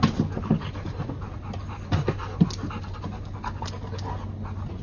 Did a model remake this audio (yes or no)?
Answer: no